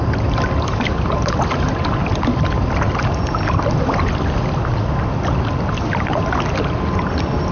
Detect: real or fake real